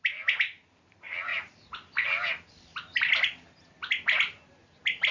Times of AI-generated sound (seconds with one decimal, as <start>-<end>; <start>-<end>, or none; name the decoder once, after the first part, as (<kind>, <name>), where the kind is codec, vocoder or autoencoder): none